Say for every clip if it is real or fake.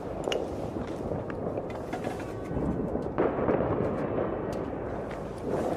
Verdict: real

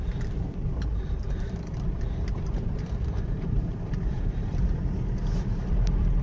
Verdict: fake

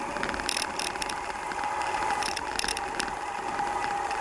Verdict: real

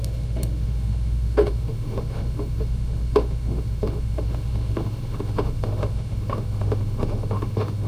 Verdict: fake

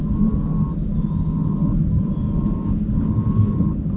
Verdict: real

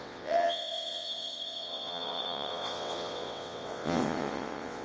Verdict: fake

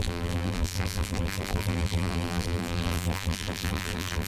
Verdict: fake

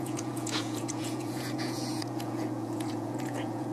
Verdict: fake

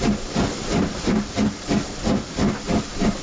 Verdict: real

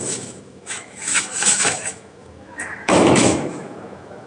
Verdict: fake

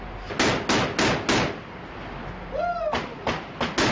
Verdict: real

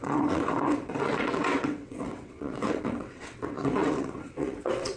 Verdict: fake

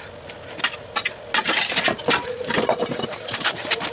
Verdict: real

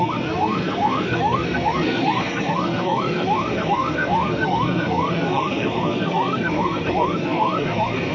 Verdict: fake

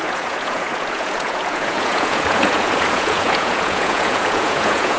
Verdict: fake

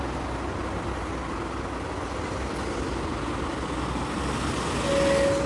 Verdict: real